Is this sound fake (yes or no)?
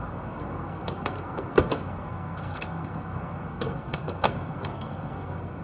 yes